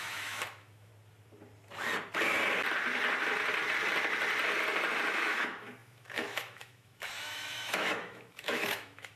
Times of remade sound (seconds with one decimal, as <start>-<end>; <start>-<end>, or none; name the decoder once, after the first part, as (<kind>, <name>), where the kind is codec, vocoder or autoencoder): 0.0-0.9 (autoencoder, DAC-VAE); 5.1-9.2